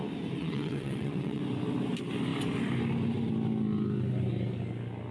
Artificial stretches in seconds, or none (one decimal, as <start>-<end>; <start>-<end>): 0.4-1.4